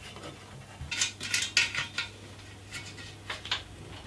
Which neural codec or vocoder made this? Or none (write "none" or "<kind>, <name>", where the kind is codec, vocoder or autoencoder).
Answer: none